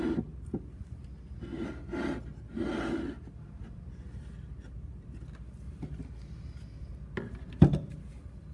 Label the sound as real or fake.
real